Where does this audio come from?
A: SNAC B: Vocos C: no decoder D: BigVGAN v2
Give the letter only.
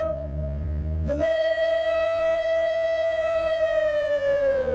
B